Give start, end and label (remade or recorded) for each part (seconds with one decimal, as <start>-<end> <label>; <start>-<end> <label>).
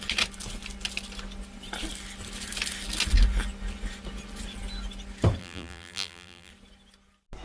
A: 0.0-5.4 recorded; 5.4-6.5 remade; 6.5-7.4 recorded